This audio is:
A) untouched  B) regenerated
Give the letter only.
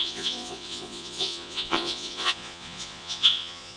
B